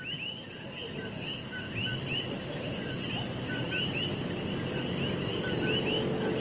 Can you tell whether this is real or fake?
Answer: real